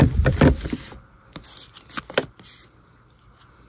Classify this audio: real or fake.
real